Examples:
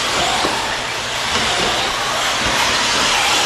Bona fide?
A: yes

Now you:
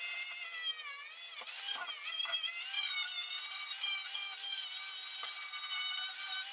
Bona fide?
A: yes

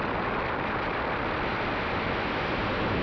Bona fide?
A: yes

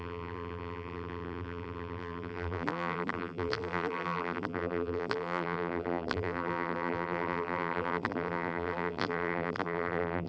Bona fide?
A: no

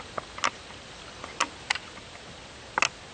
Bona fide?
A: yes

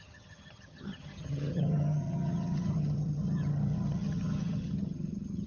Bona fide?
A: no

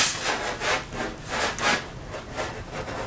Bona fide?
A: yes